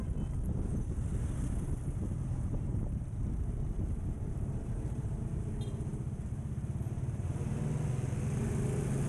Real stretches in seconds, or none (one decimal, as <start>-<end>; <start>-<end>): 0.0-1.1; 5.2-5.9; 7.3-9.1